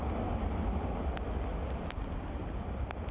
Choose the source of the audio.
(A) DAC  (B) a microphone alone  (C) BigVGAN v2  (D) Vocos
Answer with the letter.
B